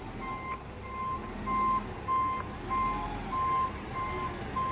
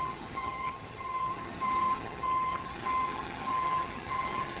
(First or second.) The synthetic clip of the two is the second